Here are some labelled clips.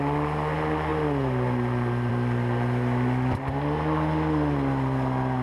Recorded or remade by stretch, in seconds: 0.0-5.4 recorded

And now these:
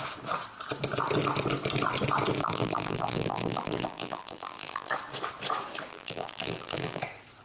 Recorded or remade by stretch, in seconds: 0.0-2.4 recorded; 2.4-4.9 remade; 4.9-5.9 recorded; 5.9-7.0 remade; 7.0-7.4 recorded

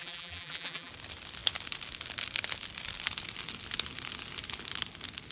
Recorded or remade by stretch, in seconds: 0.0-0.9 remade; 0.9-5.3 recorded